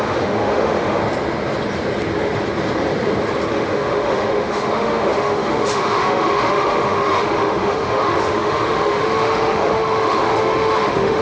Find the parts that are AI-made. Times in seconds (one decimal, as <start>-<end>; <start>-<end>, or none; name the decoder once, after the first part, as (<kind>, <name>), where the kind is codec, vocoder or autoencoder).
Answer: 0.0-1.0 (autoencoder, DAC-VAE); 3.5-11.2